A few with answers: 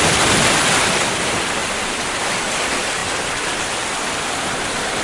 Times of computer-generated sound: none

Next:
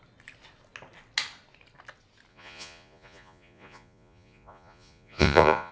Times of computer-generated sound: 2.3-5.7 (vocoder, Vocos)

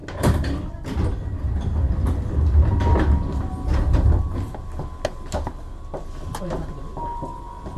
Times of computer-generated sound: none

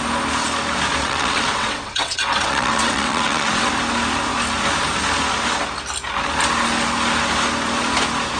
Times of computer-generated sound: 1.0-3.7 (vocoder, WaveNeXt)

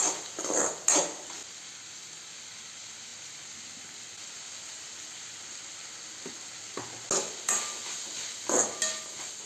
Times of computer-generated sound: none

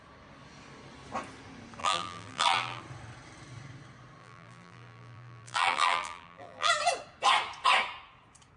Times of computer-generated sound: 1.8-2.8 (vocoder, BigVGAN v2); 4.2-6.7

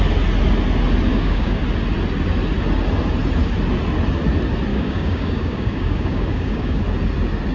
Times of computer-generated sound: 1.1-1.6 (codec, DAC); 4.7-6.8

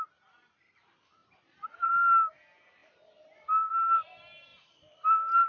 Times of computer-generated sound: 1.2-1.9 (vocoder, BigVGAN v2); 4.5-5.5